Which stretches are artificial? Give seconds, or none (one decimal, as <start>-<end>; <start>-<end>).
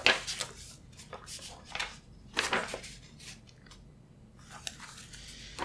1.0-1.8